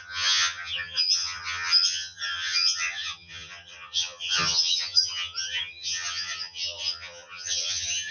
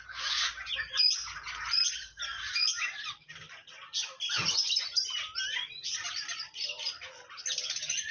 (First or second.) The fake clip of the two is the first